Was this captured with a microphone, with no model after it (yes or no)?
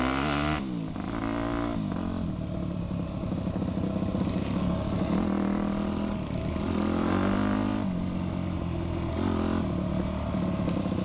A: yes